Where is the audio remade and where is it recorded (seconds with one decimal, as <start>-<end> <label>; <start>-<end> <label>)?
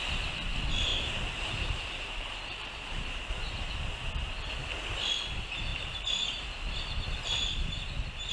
0.0-0.9 recorded; 0.9-3.3 remade; 3.3-8.3 recorded